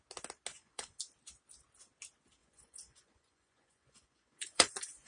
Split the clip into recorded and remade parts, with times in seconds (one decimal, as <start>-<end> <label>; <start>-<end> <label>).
0.0-0.5 recorded; 0.5-1.0 remade; 1.0-2.4 recorded; 2.4-5.1 remade